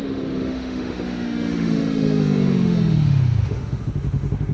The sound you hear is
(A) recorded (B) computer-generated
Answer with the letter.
B